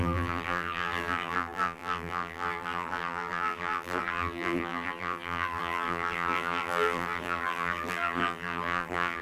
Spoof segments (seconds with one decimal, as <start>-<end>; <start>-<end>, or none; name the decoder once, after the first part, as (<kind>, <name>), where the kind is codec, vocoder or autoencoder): 0.0-9.2 (vocoder, BigVGAN v2)